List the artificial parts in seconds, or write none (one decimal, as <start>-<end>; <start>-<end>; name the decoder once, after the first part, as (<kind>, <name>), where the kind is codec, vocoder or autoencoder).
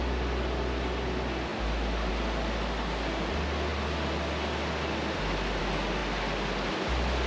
none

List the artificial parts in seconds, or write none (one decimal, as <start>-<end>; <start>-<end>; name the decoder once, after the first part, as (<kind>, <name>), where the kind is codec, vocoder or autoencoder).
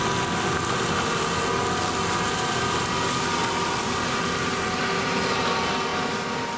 none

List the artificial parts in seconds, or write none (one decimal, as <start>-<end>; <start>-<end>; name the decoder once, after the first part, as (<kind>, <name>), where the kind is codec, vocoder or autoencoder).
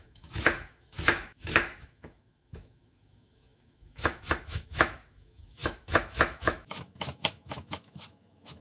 0.0-8.6 (autoencoder, DAC-VAE)